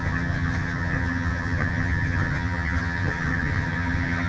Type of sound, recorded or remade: remade